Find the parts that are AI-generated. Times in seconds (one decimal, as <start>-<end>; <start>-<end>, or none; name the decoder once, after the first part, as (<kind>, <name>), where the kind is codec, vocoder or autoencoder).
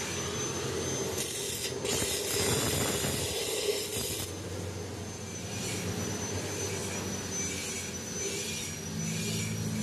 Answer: none